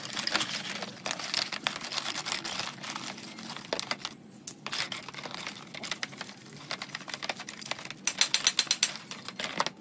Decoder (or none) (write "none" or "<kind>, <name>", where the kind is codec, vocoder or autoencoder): none